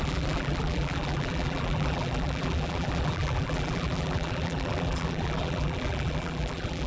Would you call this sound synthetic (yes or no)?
yes